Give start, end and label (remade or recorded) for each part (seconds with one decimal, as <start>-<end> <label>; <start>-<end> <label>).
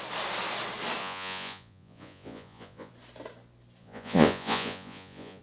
0.0-1.0 recorded; 1.0-2.9 remade; 2.9-3.8 recorded; 3.8-5.4 remade